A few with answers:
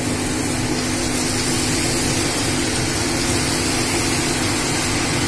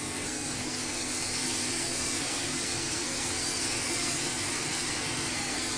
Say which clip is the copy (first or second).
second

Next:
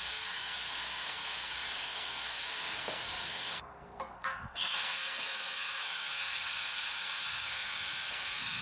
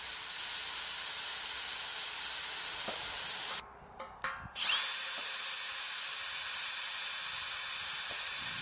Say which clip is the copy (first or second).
first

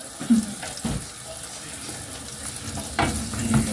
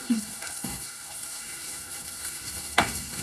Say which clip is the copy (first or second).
second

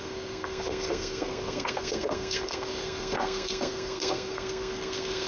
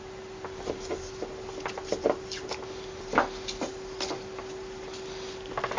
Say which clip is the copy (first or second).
first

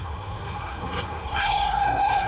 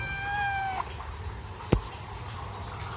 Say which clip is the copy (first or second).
first